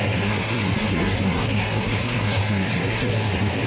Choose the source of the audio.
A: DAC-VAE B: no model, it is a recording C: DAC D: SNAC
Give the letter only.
D